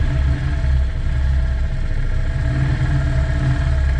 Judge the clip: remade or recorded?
recorded